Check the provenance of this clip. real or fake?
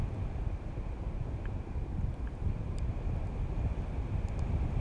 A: real